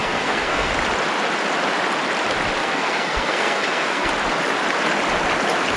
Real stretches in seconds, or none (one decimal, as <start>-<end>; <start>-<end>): 0.7-2.6; 4.1-5.8